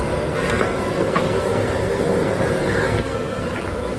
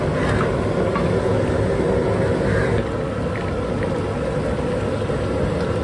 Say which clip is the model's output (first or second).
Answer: first